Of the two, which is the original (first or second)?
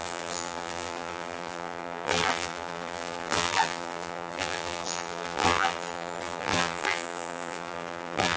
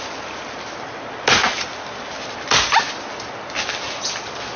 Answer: second